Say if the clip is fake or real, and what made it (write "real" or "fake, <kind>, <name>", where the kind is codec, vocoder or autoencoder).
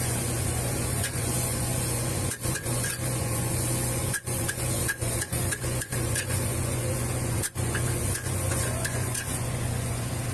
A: fake, vocoder, Vocos